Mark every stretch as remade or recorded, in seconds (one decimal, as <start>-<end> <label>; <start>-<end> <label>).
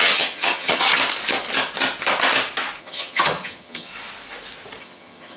0.0-0.9 remade; 0.9-2.8 recorded; 2.8-3.9 remade; 3.9-4.8 recorded; 4.8-5.4 remade